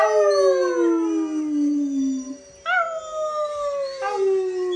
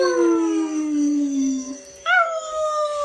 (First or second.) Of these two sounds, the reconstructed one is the second